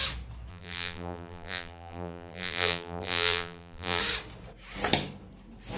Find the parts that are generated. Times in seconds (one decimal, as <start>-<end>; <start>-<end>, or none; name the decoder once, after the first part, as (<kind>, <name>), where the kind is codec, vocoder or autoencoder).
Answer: 0.5-4.0 (vocoder, BigVGAN v2)